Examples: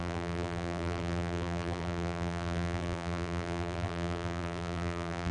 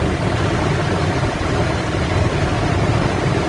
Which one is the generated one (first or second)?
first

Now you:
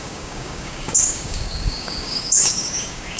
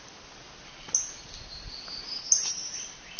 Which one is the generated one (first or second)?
first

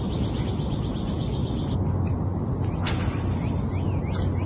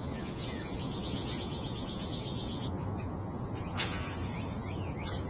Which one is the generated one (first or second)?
second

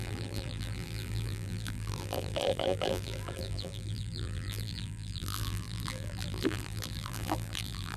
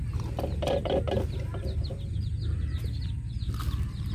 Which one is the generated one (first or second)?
first